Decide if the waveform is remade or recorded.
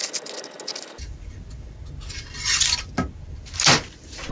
recorded